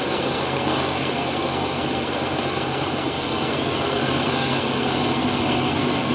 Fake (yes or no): yes